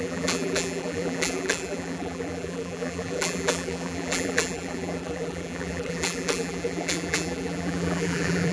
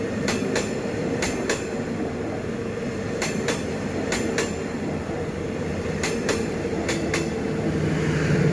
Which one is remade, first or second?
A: first